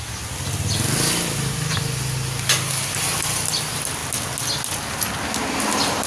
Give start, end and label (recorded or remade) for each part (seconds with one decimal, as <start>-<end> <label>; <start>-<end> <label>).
0.0-6.1 recorded